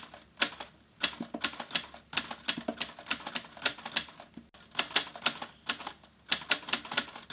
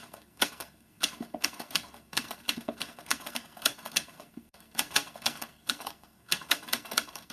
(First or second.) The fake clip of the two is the second